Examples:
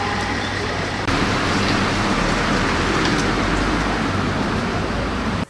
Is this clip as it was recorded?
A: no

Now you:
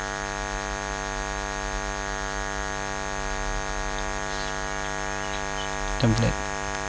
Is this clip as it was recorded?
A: yes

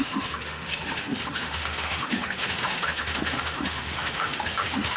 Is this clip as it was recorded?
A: no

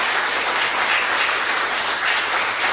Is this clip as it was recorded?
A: yes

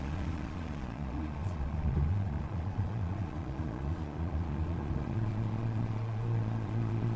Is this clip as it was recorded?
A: no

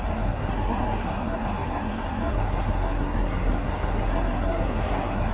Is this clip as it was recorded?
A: no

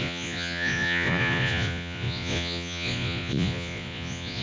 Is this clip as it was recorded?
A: no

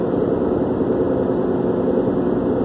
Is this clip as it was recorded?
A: yes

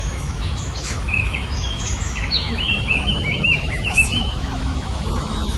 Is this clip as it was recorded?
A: no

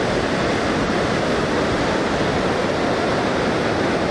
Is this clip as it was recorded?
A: yes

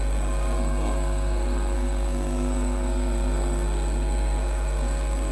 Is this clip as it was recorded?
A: no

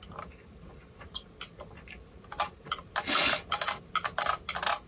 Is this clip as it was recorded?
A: yes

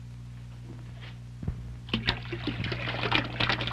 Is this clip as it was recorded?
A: yes